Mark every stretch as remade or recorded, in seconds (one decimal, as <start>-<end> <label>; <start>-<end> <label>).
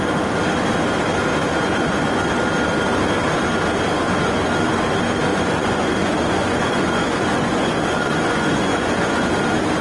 0.0-1.4 recorded; 1.4-2.2 remade; 2.2-5.3 recorded; 5.3-9.3 remade; 9.3-9.8 recorded